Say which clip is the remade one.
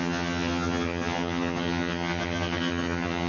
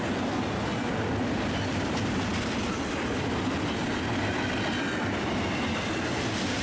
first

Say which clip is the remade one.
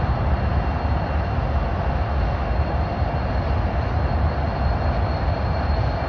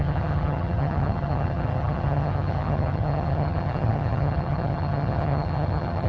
second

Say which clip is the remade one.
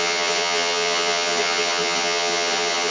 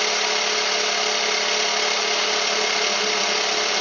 first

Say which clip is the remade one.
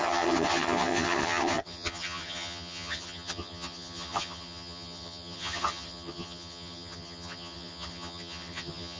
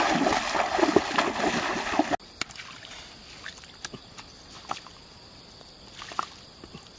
first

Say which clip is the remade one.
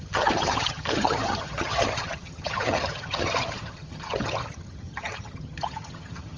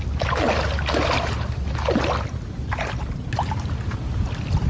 first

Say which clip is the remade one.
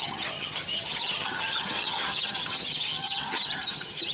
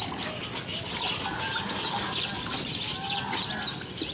first